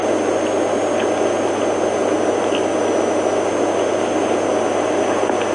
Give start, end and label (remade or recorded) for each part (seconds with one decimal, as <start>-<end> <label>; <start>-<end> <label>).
0.0-5.5 recorded